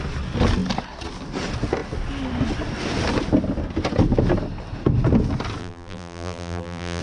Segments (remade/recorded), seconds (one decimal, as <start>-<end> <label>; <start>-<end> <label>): 0.0-5.6 recorded; 5.6-7.0 remade